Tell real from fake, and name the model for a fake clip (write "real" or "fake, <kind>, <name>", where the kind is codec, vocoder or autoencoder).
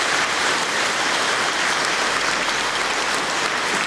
real